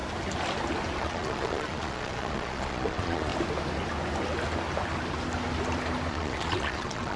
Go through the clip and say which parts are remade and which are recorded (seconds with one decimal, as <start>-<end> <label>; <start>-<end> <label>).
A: 0.0-1.0 recorded; 1.0-3.3 remade; 3.3-6.1 recorded; 6.1-7.2 remade